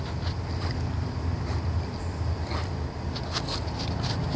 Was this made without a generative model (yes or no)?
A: yes